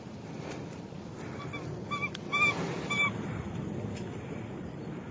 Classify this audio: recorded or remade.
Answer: recorded